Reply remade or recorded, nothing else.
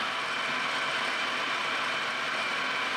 recorded